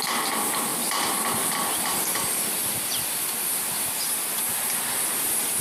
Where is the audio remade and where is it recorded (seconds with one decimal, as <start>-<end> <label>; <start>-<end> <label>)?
0.0-0.7 recorded; 0.7-4.1 remade; 4.1-5.6 recorded